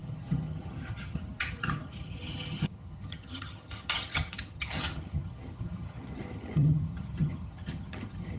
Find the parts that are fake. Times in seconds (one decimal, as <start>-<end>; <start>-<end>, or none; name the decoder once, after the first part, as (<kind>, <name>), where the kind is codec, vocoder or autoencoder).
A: 0.0-8.4 (vocoder, HiFi-GAN)